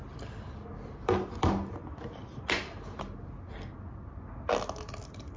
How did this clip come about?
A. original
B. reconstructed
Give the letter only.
A